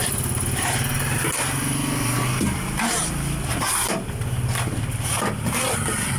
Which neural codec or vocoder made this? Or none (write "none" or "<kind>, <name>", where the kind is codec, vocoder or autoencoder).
none